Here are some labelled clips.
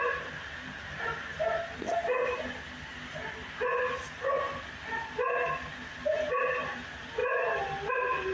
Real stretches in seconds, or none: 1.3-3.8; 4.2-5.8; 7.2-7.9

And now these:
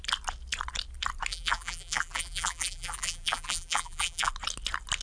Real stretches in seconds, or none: 0.0-1.3; 4.3-5.0

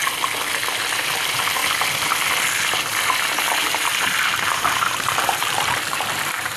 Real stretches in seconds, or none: 0.0-1.0; 1.6-3.6

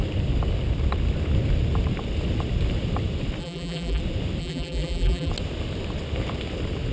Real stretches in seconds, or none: 0.0-3.4; 4.0-4.4; 5.3-6.9

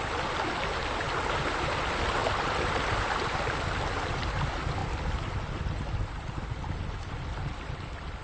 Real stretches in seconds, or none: 0.0-2.2; 3.3-8.2